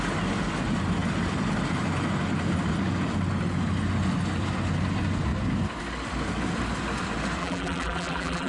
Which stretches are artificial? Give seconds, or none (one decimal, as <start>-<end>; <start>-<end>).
7.4-8.5